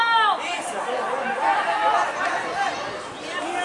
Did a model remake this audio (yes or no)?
no